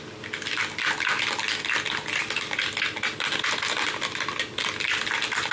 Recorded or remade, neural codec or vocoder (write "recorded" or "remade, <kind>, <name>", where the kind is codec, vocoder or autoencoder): recorded